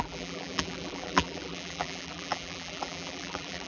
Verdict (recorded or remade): remade